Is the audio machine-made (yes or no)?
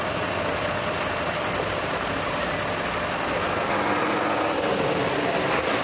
no